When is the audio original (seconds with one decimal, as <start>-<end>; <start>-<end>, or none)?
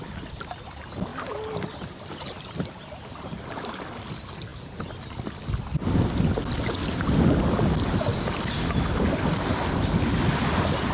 0.0-10.9